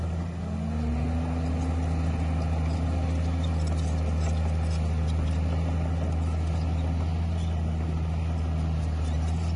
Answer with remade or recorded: recorded